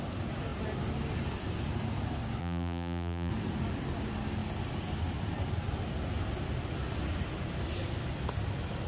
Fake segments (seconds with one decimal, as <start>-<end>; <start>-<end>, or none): 2.4-3.3

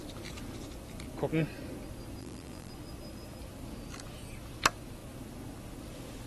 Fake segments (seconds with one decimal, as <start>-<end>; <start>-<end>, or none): 2.2-2.7

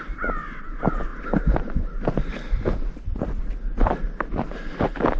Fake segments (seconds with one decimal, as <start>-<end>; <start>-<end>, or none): none